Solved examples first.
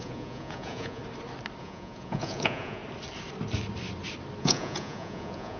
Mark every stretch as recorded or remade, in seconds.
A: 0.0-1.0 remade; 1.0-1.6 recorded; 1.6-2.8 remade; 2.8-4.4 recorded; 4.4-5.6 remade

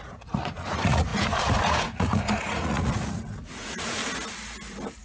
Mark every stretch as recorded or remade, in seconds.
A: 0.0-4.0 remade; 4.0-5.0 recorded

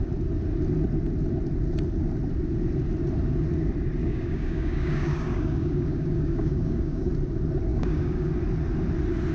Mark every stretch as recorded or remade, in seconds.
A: 0.0-4.0 recorded; 4.0-7.1 remade; 7.1-7.7 recorded; 7.7-8.3 remade; 8.3-9.3 recorded

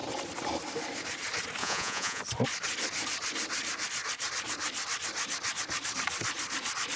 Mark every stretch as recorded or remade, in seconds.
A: 0.0-1.6 recorded; 1.6-2.2 remade; 2.2-7.0 recorded

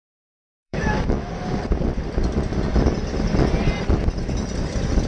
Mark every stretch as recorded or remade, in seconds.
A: 0.0-0.6 recorded; 0.6-1.3 remade; 1.3-5.1 recorded

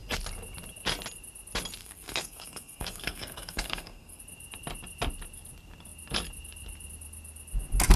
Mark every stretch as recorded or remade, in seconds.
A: 0.0-1.8 recorded; 1.8-4.2 remade; 4.2-8.0 recorded